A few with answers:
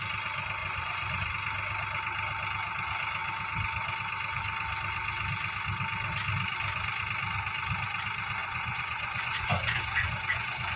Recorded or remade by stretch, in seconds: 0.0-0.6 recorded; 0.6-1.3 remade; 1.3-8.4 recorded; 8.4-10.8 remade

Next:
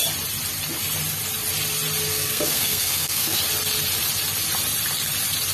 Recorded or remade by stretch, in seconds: 0.0-2.1 recorded; 2.1-3.4 remade; 3.4-5.5 recorded

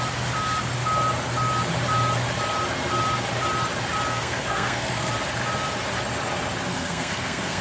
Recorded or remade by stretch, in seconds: 0.0-4.1 recorded; 4.1-5.1 remade; 5.1-6.7 recorded; 6.7-7.6 remade